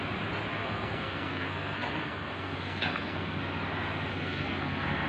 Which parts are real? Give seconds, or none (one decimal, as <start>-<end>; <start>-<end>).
0.0-0.5; 3.4-4.1